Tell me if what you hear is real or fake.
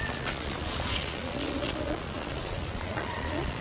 fake